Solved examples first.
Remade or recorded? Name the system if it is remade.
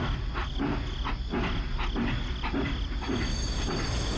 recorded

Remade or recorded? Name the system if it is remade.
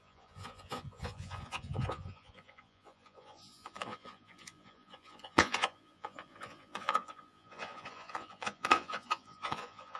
remade, vocoder, Vocos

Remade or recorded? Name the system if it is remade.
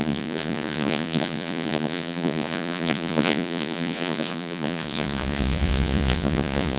remade, vocoder, Vocos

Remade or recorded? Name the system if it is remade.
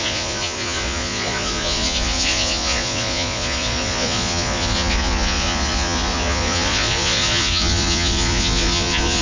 remade, vocoder, Vocos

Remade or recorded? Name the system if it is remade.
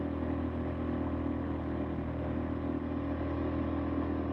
recorded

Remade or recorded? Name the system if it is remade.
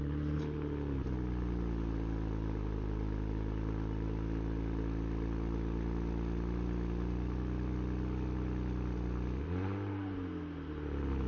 recorded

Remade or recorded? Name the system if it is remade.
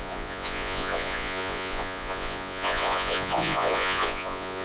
remade, vocoder, Vocos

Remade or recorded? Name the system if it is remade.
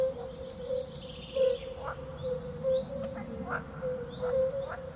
recorded